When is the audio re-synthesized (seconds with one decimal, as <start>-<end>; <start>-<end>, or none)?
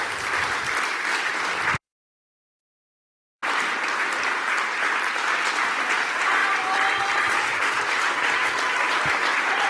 0.0-9.7